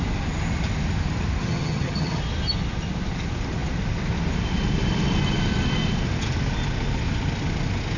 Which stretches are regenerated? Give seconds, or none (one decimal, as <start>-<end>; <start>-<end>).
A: 1.4-2.2